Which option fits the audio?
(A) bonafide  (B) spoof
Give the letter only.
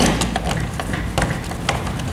A